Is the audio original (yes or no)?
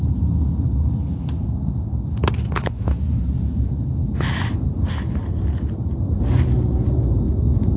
yes